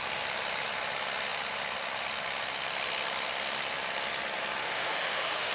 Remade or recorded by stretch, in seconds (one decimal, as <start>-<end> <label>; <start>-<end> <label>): 0.0-4.6 recorded; 4.6-5.5 remade